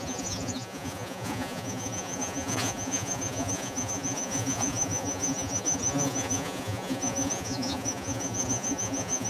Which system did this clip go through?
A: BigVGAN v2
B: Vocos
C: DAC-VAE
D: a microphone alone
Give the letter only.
B